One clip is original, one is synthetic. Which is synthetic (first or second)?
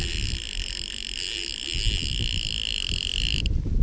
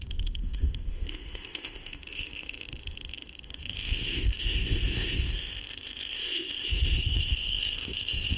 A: second